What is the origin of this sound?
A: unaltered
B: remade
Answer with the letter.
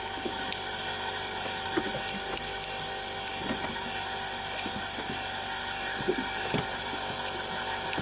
A